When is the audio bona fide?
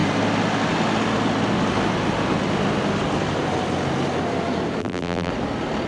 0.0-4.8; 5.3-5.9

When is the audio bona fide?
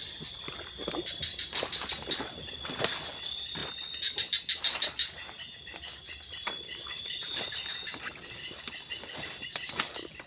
0.0-10.3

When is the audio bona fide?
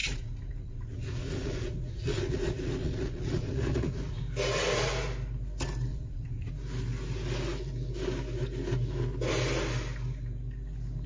4.2-5.9; 6.5-11.1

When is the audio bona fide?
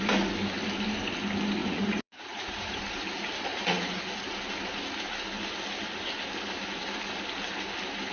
0.0-1.6; 2.8-3.5; 4.0-8.1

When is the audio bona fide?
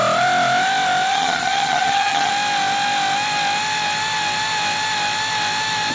0.0-1.1; 2.3-5.9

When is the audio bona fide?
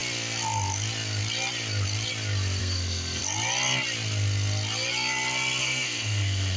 0.0-2.6; 3.2-5.6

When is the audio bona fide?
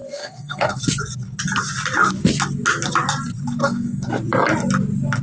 0.8-3.6; 4.1-5.2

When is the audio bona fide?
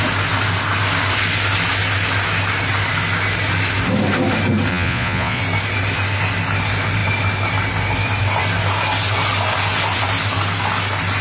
0.0-4.7; 5.4-11.2